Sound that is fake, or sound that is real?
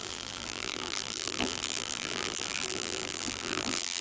fake